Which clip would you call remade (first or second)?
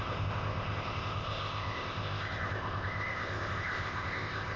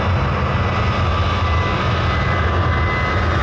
first